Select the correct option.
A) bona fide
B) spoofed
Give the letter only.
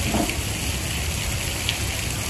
A